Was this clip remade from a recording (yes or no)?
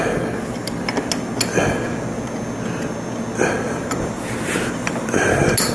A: no